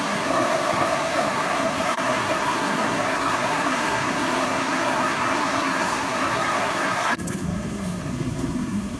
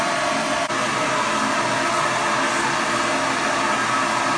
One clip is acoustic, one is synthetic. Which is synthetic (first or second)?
first